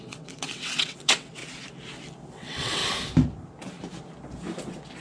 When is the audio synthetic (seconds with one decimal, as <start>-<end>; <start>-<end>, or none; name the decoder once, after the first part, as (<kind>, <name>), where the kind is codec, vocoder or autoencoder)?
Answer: 0.0-1.4 (vocoder, WaveNeXt); 2.3-2.8